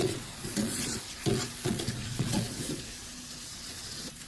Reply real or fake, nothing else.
fake